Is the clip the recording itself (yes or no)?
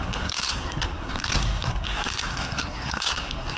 no